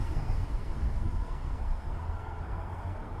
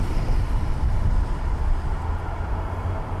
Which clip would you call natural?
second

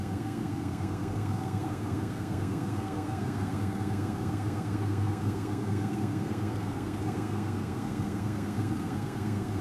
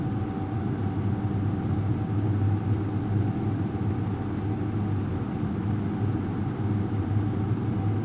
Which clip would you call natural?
second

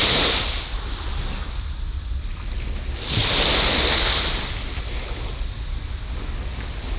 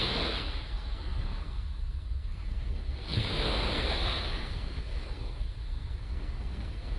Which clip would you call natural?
first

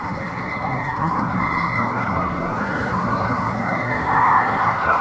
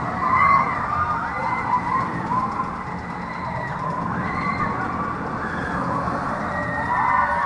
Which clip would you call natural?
second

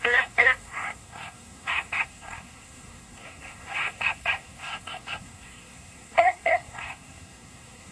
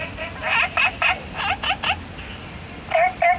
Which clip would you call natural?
second